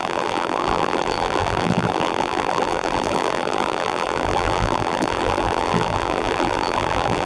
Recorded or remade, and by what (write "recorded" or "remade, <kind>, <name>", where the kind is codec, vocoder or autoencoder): remade, vocoder, BigVGAN v2